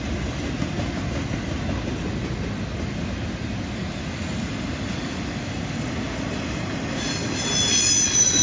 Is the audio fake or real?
real